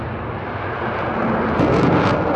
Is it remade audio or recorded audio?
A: recorded